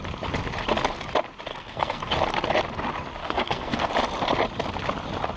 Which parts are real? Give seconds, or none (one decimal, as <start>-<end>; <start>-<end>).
0.0-1.5; 2.1-3.2; 3.9-5.4